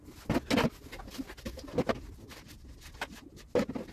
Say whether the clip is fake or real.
real